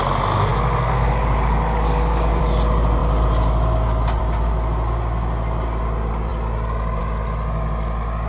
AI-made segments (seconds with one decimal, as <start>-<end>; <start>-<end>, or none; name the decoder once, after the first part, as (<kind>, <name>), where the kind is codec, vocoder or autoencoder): 0.5-2.4 (codec, DAC)